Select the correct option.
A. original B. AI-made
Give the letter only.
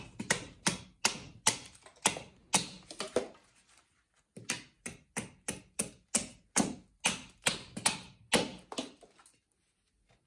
A